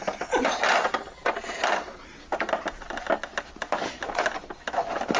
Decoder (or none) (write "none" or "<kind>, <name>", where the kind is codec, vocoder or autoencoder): none